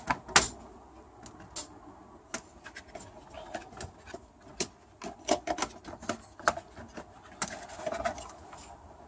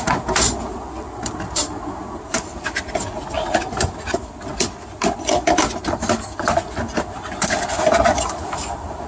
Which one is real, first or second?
first